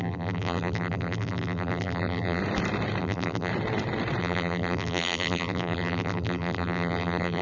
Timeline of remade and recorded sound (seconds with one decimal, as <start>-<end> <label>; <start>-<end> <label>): 0.0-2.4 remade; 2.4-3.0 recorded; 3.0-3.5 remade; 3.5-4.2 recorded; 4.2-7.4 remade